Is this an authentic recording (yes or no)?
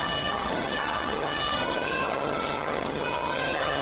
no